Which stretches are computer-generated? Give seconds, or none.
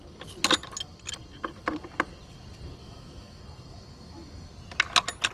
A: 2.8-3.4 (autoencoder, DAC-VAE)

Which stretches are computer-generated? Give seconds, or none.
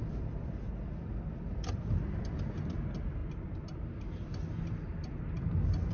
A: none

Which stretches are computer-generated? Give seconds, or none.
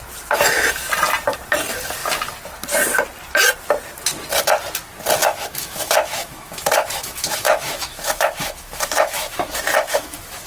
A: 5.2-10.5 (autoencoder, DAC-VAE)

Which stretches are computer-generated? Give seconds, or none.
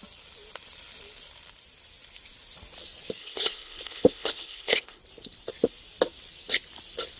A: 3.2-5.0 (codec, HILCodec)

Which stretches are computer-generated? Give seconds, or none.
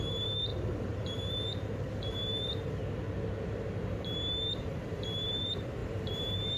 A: 0.0-2.8 (vocoder, BigVGAN v2); 4.5-6.6